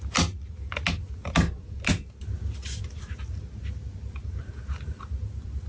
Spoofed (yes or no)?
no